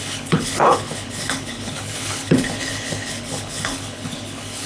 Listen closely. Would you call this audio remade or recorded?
remade